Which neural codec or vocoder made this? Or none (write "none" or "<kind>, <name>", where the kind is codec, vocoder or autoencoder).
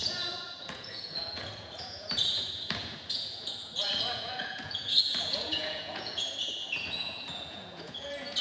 vocoder, Vocos